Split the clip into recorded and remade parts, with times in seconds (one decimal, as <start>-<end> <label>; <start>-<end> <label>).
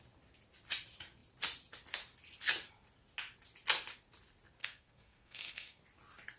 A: 0.0-4.6 recorded; 4.6-5.8 remade; 5.8-6.4 recorded